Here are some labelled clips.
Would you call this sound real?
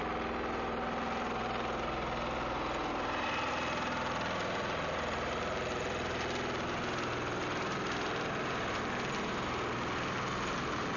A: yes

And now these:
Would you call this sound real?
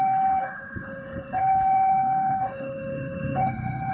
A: no